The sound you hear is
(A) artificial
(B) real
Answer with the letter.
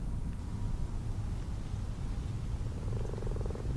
B